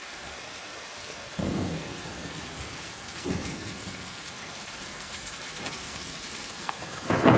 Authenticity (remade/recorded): remade